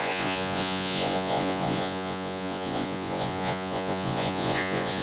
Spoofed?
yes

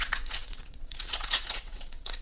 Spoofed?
yes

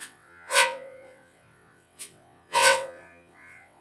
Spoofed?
yes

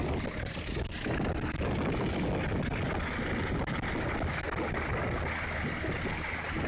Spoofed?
no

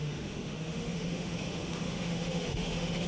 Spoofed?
yes